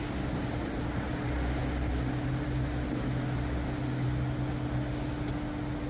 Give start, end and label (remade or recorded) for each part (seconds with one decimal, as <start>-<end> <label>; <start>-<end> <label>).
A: 0.0-5.9 recorded